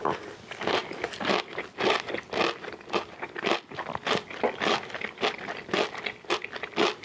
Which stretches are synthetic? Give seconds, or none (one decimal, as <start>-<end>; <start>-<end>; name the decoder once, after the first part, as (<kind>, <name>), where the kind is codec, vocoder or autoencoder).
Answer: none